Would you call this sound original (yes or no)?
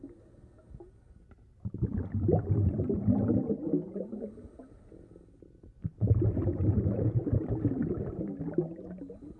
yes